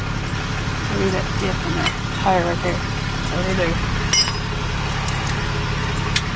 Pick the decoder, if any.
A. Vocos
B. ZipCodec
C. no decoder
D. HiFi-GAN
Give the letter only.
C